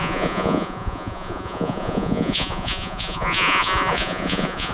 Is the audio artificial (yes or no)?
yes